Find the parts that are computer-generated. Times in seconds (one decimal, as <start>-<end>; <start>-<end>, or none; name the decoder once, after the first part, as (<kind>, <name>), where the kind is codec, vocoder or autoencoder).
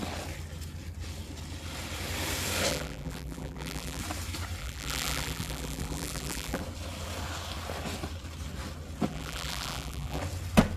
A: 2.7-4.0 (vocoder, BigVGAN v2); 4.6-6.6; 9.1-10.2